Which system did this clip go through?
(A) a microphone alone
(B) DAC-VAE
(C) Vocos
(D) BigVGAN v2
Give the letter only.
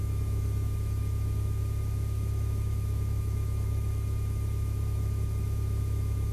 B